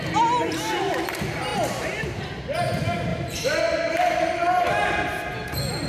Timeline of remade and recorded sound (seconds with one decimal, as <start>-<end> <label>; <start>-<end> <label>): 0.0-1.5 recorded; 1.5-2.2 remade; 2.2-3.1 recorded; 3.1-3.6 remade; 3.6-5.9 recorded